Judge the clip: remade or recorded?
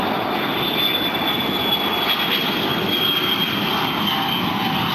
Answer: recorded